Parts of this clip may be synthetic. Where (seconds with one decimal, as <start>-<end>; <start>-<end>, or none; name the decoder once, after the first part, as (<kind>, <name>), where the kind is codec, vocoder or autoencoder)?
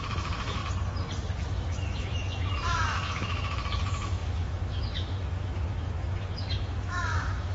0.0-0.6 (autoencoder, DAC-VAE); 1.5-7.5